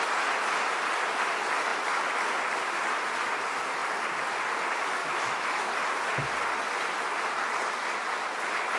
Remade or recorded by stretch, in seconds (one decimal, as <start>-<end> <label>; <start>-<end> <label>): 0.0-5.0 recorded; 5.0-5.7 remade; 5.7-8.8 recorded